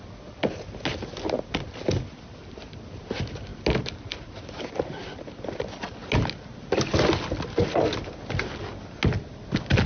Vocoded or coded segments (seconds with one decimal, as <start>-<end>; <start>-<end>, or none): none